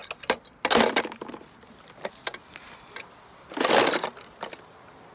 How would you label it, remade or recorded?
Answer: recorded